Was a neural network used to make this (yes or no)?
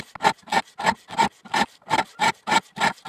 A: no